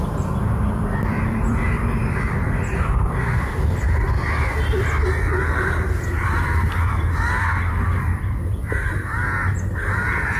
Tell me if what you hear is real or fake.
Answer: fake